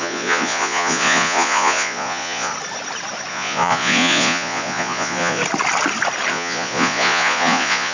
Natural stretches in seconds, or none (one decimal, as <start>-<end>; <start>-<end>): 2.5-3.3; 5.4-6.3